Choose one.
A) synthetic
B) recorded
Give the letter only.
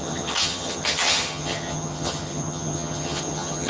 A